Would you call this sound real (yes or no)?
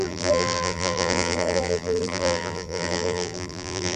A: no